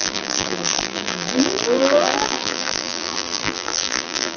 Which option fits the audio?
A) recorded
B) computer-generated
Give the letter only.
B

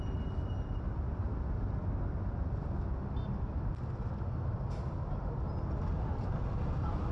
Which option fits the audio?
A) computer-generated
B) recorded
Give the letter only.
B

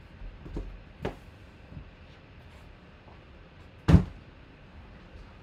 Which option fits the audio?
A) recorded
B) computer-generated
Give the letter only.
A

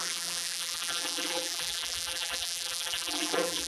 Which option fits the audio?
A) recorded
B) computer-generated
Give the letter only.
B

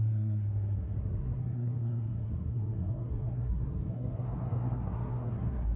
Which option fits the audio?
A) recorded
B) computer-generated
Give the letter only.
B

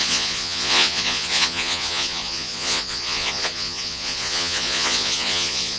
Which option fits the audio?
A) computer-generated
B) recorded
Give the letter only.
A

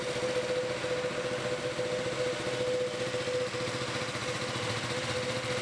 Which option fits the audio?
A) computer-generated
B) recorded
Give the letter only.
B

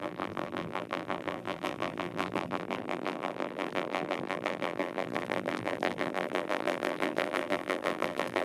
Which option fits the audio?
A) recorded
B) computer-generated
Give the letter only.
B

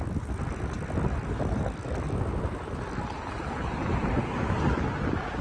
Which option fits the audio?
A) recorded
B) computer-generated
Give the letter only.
A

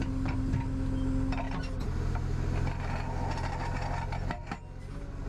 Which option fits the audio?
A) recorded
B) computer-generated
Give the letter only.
A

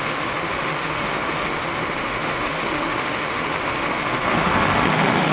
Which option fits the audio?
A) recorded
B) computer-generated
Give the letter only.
B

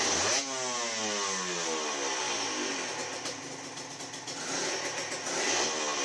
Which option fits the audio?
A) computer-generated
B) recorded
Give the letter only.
B